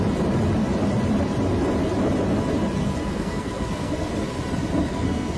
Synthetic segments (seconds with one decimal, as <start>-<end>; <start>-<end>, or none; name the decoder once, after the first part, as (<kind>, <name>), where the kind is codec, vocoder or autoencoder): 3.0-4.1 (codec, SNAC); 4.9-5.4